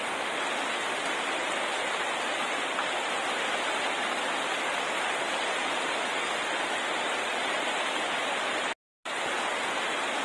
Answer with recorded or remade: recorded